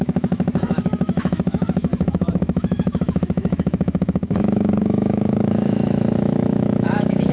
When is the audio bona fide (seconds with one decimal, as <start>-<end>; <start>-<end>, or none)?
none